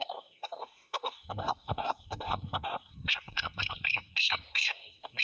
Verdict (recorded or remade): remade